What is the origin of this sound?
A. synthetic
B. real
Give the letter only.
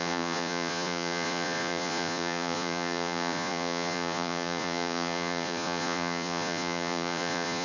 A